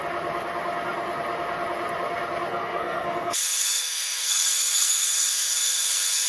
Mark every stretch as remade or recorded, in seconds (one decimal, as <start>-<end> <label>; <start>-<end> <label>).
0.0-2.5 recorded; 2.5-6.3 remade